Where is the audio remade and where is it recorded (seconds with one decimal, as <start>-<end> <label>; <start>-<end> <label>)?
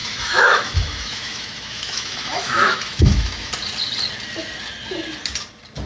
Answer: 0.0-3.5 remade; 3.5-5.9 recorded